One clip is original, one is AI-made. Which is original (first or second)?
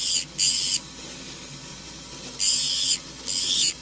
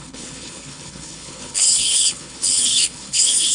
first